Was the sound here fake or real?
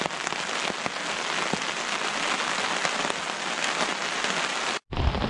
real